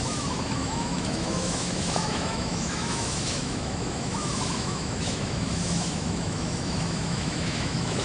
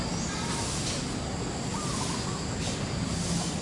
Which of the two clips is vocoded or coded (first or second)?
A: first